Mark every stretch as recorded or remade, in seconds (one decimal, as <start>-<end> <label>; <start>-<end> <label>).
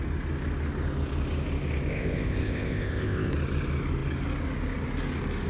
0.0-1.9 recorded; 1.9-3.3 remade; 3.3-5.5 recorded